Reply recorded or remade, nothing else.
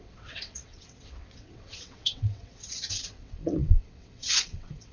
remade